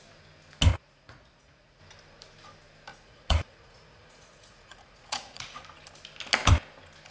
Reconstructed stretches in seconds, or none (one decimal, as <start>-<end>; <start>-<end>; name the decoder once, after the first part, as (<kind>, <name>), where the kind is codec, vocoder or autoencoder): 0.7-1.8 (vocoder, Vocos); 2.9-5.6